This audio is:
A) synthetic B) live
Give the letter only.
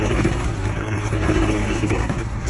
A